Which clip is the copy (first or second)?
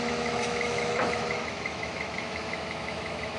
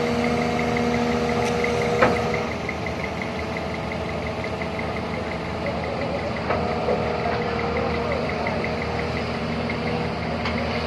first